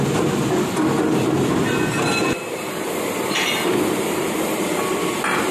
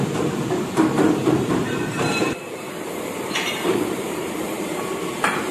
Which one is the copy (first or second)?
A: second